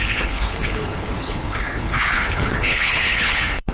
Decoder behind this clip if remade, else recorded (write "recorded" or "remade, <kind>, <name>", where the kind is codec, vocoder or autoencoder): remade, codec, HILCodec